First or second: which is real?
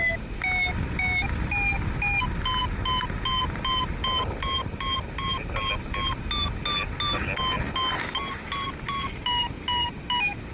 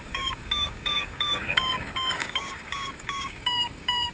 first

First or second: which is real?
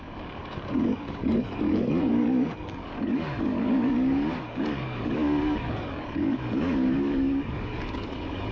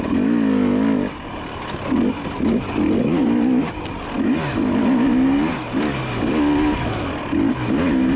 second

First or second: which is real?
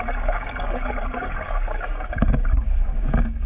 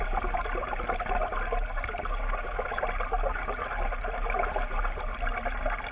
second